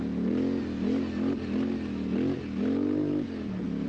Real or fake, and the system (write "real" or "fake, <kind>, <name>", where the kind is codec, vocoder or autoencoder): real